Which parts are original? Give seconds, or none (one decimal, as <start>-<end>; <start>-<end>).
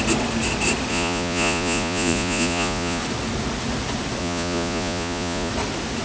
0.0-0.9; 3.0-4.2; 5.5-6.0